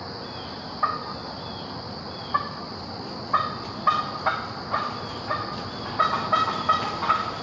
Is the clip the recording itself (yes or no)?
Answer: yes